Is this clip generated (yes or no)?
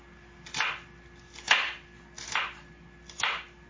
no